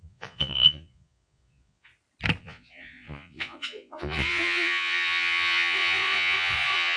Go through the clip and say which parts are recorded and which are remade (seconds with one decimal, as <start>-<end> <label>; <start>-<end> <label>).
0.0-1.9 remade; 1.9-2.4 recorded; 2.4-7.0 remade